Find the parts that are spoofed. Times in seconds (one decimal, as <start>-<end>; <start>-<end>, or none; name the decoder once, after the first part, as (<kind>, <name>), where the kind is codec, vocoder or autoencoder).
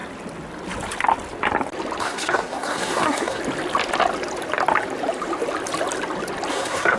2.0-3.4 (codec, SNAC); 6.5-7.0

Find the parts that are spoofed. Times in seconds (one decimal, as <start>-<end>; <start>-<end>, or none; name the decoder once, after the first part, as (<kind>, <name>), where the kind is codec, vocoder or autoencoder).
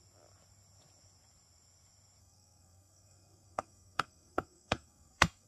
2.2-5.5 (codec, SNAC)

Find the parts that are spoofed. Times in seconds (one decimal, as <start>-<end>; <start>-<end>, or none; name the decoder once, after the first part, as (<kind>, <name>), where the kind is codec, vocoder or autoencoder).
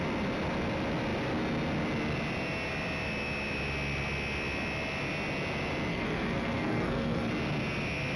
5.9-7.3 (codec, SNAC)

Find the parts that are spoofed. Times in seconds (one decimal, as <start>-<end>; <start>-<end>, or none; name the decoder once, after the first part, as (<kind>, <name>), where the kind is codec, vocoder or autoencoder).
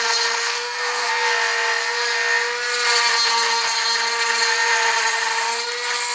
0.4-1.1 (codec, SNAC)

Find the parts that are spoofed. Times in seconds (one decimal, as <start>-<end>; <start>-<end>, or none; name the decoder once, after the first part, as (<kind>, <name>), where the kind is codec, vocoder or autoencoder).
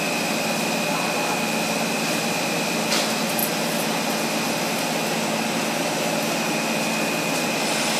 none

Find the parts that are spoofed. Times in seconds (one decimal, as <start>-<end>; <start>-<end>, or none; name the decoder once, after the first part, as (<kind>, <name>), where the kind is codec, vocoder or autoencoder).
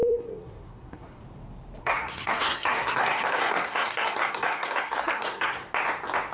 0.0-1.2 (codec, SNAC); 1.8-5.6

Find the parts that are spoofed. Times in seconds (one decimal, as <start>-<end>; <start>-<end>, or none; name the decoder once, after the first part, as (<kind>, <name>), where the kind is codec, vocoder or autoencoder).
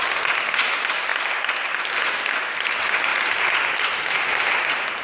none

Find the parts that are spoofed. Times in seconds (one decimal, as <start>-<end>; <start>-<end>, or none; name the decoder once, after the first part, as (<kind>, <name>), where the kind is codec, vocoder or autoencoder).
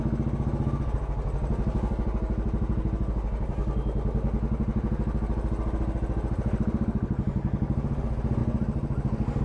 none